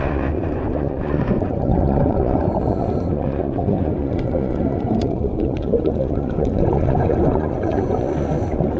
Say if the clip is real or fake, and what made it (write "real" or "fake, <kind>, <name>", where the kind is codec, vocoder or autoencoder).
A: fake, vocoder, Vocos